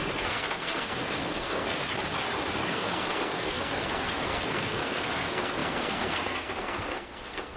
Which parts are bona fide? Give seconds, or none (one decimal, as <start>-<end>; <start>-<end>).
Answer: 1.9-2.5

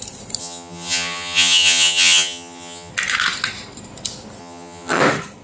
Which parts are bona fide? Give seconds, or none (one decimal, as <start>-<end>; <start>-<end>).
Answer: 0.0-0.4; 2.9-4.4; 5.0-5.4

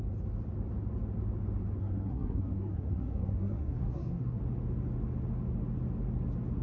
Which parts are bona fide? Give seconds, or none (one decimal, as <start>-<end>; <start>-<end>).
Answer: 0.0-1.8; 4.4-6.6

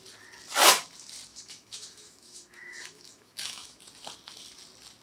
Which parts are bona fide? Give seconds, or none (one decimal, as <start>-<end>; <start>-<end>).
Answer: 0.0-1.3; 3.8-5.0

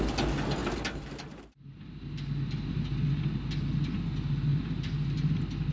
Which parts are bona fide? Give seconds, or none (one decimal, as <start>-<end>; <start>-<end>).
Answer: 0.0-5.7

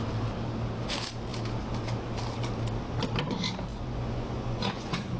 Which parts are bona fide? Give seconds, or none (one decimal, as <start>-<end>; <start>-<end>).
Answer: 0.0-3.7

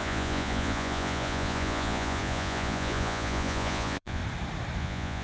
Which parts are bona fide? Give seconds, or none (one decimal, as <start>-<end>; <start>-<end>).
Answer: 4.2-4.8

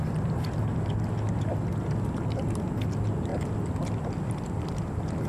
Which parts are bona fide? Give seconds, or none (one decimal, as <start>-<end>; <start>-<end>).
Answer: 0.0-5.3